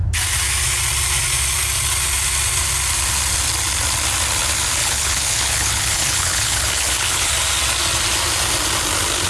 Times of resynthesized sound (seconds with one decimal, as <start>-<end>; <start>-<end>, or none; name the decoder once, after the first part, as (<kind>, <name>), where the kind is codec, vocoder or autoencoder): 4.8-7.3 (codec, HILCodec)